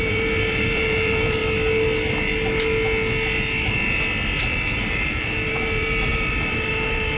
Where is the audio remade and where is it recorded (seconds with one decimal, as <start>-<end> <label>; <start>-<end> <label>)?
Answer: 0.0-1.4 remade; 1.4-4.4 recorded; 4.4-7.2 remade